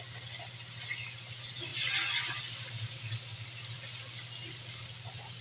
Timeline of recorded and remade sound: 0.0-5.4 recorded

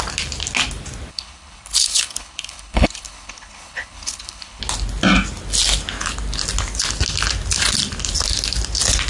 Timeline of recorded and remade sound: 0.0-1.1 recorded; 1.1-4.6 remade; 4.6-9.1 recorded

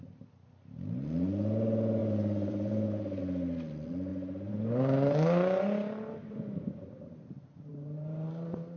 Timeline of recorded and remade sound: 0.0-2.0 recorded; 2.0-3.2 remade; 3.2-4.1 recorded; 4.1-6.9 remade; 6.9-7.7 recorded; 7.7-8.8 remade